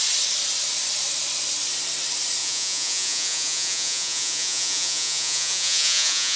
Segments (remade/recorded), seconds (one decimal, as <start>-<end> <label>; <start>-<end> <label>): 0.0-2.4 recorded; 2.4-6.4 remade